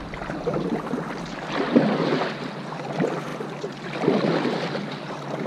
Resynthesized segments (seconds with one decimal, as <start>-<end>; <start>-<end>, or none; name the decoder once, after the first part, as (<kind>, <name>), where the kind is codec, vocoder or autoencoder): none